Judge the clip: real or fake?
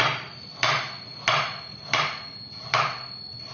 real